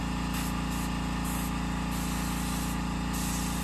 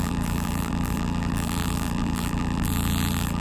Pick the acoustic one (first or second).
first